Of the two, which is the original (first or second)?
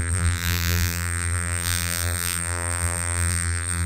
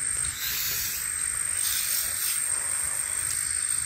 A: second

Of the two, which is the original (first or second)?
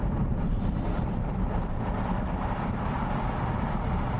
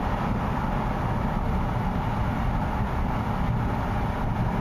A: second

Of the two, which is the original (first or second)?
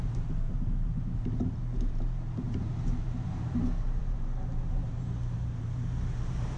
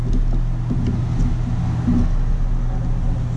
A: second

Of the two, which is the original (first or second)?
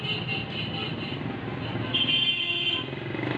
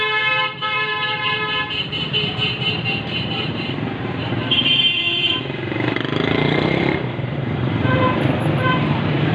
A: first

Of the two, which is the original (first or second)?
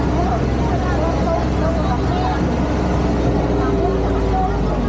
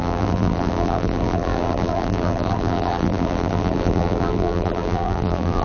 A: first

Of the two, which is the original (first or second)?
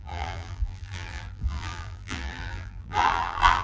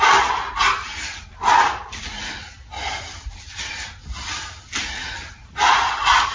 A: second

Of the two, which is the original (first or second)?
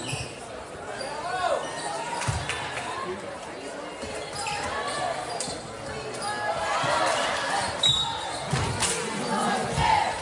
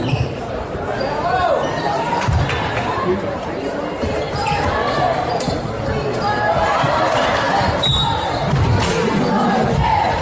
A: first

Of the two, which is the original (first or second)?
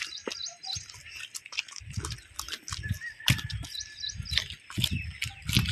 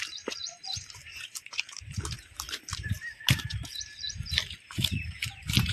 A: first